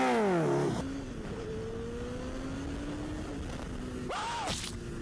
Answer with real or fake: real